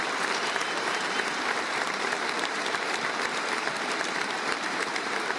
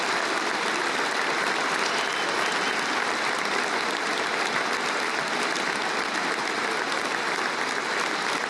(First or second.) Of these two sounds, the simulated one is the first